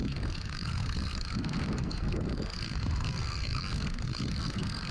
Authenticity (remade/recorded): remade